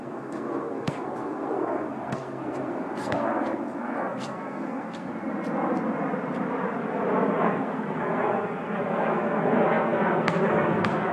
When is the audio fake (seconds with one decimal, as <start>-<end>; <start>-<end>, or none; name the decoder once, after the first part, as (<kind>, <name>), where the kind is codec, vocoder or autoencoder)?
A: 0.0-5.1 (codec, SNAC); 7.3-11.1